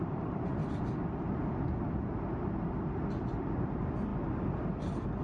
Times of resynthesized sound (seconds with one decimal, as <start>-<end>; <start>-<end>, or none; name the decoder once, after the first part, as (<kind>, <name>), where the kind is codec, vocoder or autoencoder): 0.0-0.6 (vocoder, BigVGAN v2); 3.4-4.1